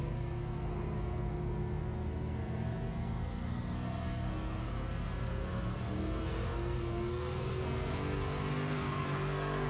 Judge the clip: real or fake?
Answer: fake